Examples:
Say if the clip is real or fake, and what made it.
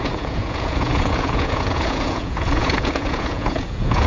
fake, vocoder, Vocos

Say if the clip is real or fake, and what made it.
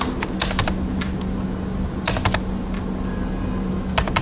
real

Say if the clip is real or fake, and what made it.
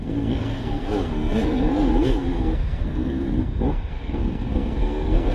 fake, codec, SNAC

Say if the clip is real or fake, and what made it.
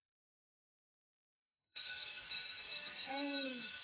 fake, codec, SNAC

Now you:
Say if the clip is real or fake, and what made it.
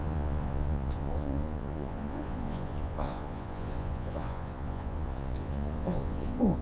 fake, vocoder, Vocos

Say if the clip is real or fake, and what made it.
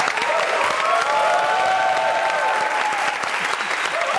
real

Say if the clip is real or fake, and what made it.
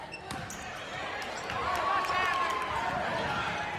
real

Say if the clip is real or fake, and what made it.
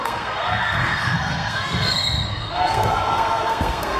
fake, codec, SNAC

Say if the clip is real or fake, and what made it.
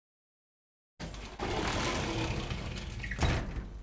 real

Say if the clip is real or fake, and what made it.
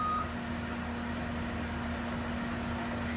real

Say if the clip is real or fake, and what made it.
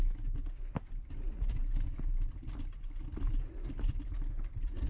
real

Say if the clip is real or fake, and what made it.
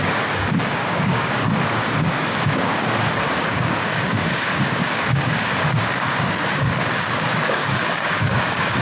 fake, codec, DAC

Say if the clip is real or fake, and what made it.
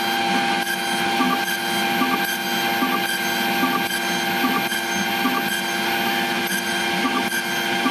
real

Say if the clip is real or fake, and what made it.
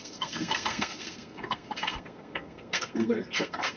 fake, codec, SNAC